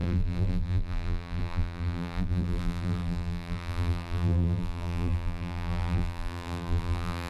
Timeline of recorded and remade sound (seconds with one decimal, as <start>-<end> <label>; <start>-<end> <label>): 0.0-7.3 remade

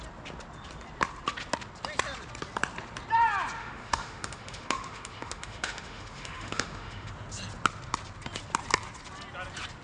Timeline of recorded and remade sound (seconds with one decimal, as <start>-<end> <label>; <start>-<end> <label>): 0.0-3.6 recorded; 3.6-7.1 remade; 7.1-9.8 recorded

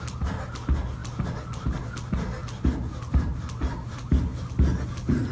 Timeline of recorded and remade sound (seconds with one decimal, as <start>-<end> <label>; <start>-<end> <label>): 0.0-5.3 recorded

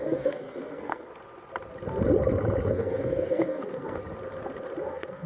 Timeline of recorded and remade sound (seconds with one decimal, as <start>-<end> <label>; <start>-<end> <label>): 0.0-1.1 remade; 1.1-2.7 recorded; 2.7-4.0 remade; 4.0-4.8 recorded; 4.8-5.3 remade

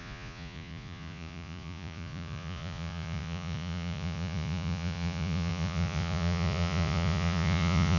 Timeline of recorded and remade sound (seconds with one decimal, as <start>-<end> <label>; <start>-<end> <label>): 0.0-8.0 remade

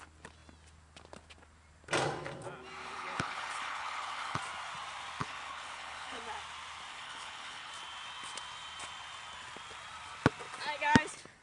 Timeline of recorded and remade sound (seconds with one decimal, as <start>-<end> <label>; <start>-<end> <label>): 0.0-2.8 recorded; 2.8-4.4 remade; 4.4-5.2 recorded; 5.2-6.2 remade; 6.2-6.9 recorded; 6.9-7.7 remade; 7.7-11.4 recorded

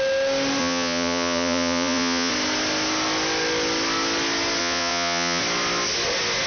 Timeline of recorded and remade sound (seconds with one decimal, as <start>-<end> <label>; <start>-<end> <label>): 0.0-0.6 recorded; 0.6-2.3 remade; 2.3-4.6 recorded; 4.6-5.4 remade; 5.4-6.5 recorded